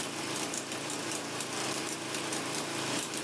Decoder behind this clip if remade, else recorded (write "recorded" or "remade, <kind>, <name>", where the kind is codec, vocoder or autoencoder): remade, vocoder, BigVGAN v2